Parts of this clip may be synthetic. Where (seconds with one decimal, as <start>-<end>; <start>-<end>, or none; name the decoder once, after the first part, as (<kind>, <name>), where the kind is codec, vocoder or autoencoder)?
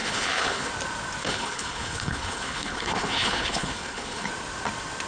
0.0-0.7 (codec, HILCodec); 1.2-4.3